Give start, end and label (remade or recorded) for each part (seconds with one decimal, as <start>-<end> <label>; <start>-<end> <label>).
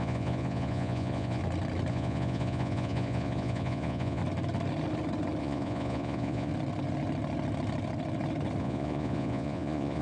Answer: 0.0-1.4 remade; 1.4-1.9 recorded; 1.9-4.2 remade; 4.2-5.4 recorded; 5.4-6.5 remade; 6.5-8.6 recorded; 8.6-10.0 remade